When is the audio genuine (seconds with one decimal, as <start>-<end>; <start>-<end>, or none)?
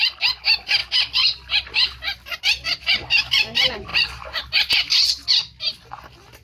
0.0-6.4